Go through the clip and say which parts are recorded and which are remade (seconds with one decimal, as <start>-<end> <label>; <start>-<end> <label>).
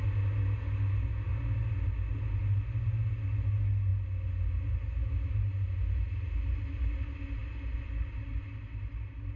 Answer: 0.0-9.4 recorded